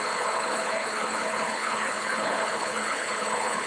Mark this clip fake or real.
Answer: fake